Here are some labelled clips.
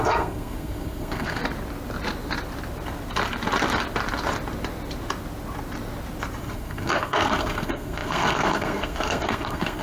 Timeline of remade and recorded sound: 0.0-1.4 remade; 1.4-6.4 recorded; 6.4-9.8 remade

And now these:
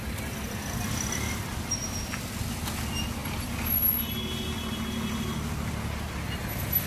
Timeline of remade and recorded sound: 0.0-6.9 recorded

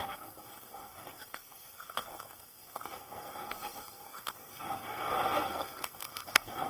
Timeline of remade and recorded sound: 0.0-6.7 remade

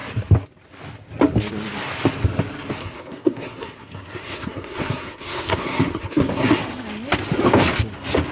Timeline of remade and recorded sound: 0.0-2.8 recorded; 2.8-6.6 remade; 6.6-8.3 recorded

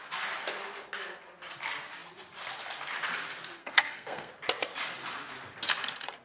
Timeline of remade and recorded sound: 0.0-3.6 recorded; 3.6-4.3 remade; 4.3-6.2 recorded

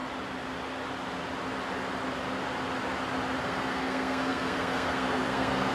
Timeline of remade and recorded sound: 0.0-3.4 recorded; 3.4-5.7 remade